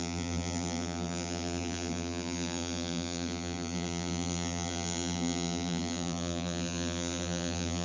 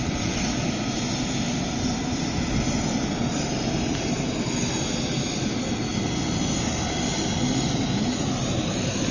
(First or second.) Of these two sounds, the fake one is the first